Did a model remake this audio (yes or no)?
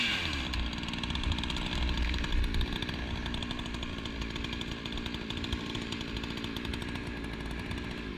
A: no